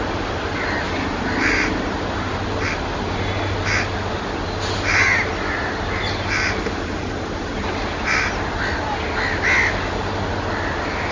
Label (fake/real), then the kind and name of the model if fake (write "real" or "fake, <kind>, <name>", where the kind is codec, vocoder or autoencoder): real